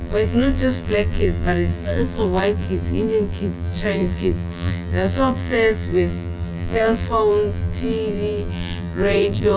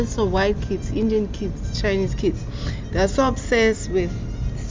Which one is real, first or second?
second